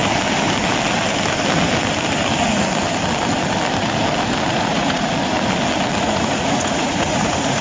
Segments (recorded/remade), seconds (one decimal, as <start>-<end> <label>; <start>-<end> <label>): 0.0-4.5 recorded; 4.5-5.1 remade; 5.1-6.0 recorded; 6.0-7.6 remade